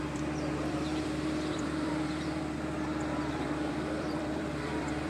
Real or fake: fake